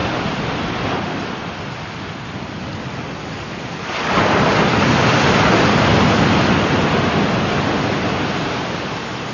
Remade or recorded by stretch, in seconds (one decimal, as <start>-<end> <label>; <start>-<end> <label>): 0.0-9.3 recorded